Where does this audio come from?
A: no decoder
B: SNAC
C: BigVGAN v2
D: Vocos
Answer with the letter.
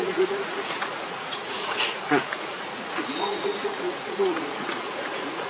D